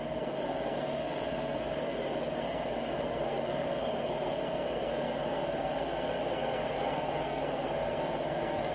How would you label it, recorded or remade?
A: remade